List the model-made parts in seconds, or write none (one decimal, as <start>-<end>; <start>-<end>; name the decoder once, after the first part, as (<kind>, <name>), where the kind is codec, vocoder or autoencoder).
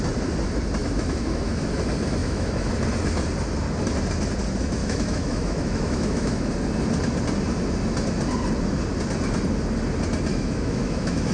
0.8-1.8 (autoencoder, DAC-VAE); 2.2-2.7; 4.8-6.5; 10.3-11.3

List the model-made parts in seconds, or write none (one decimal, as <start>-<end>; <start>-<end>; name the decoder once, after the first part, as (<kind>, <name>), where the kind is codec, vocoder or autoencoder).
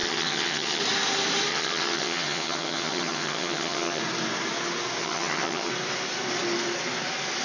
0.0-0.8 (vocoder, HiFi-GAN); 1.5-4.0; 5.0-5.7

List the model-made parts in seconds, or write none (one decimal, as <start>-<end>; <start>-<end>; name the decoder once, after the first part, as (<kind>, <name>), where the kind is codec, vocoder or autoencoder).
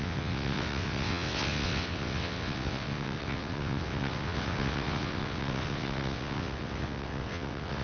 0.0-7.8 (vocoder, WaveNeXt)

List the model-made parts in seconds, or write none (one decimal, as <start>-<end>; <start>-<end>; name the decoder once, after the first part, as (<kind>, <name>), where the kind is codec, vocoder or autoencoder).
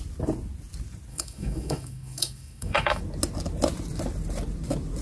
1.1-3.0 (autoencoder, DAC-VAE)